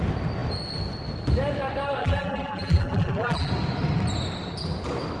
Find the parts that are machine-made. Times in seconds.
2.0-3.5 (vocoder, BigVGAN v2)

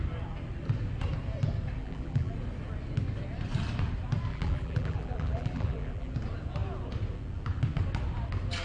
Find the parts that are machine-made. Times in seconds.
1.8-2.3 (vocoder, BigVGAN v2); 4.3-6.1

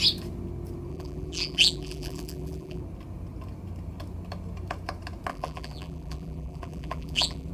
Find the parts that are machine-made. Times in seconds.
0.9-2.8 (vocoder, BigVGAN v2); 5.3-7.5

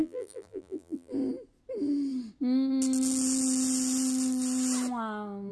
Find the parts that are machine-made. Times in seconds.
0.0-1.1 (vocoder, BigVGAN v2)